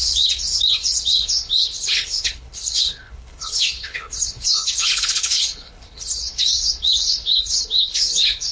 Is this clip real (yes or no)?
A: no